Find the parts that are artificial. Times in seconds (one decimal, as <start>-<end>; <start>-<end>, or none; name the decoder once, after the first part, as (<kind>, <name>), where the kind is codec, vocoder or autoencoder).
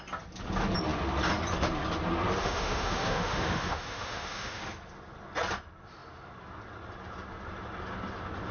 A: 2.4-4.6 (autoencoder, DAC-VAE)